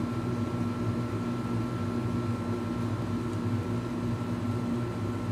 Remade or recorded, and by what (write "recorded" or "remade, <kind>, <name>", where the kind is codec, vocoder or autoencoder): recorded